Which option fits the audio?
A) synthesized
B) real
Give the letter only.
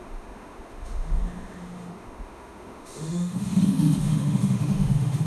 A